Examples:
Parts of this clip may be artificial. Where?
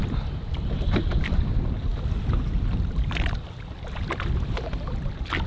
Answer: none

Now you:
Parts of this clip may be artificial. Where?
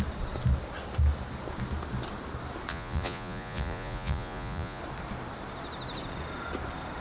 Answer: 2.7-4.8